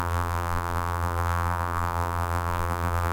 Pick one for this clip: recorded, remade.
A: remade